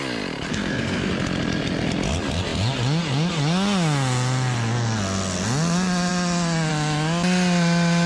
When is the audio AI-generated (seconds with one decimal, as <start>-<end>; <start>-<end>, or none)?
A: 0.5-1.1